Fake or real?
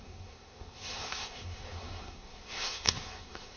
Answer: fake